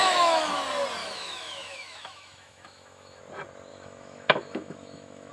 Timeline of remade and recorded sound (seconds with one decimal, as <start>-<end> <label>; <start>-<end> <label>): 0.0-0.5 remade; 0.5-1.0 recorded; 1.0-3.2 remade; 3.2-3.7 recorded; 3.7-5.3 remade